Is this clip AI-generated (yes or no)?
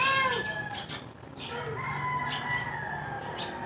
no